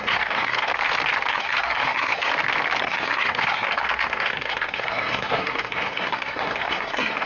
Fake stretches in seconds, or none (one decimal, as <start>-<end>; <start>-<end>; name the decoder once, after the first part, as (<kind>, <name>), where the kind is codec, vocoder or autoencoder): 0.0-0.7 (codec, SNAC); 1.3-2.3; 2.8-7.3